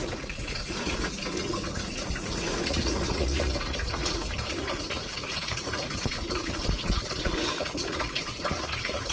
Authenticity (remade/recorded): remade